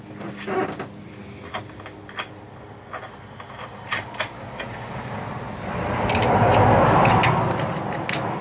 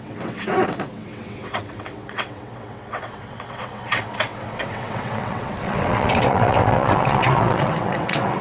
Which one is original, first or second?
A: first